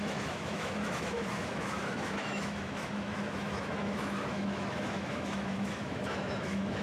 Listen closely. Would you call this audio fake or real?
fake